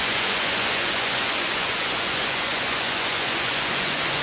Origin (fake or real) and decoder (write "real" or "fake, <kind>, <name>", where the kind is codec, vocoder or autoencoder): fake, vocoder, Vocos